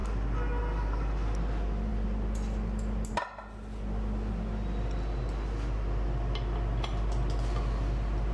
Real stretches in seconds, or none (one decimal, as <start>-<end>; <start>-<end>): 0.0-8.3